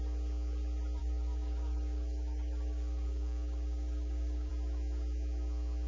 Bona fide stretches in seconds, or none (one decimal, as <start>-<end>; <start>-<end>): 0.0-1.0; 4.5-5.9